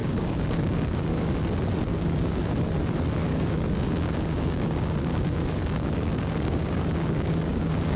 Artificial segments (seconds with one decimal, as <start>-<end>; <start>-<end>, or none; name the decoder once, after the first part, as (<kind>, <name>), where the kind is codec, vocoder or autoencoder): 0.0-1.3 (codec, DAC); 1.9-2.4; 3.3-8.0